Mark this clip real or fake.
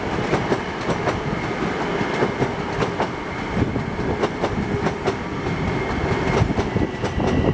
real